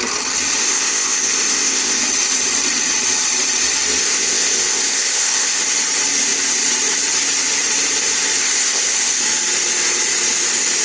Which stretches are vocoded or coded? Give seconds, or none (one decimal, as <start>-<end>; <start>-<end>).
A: 0.6-2.0; 4.0-5.6; 8.4-9.2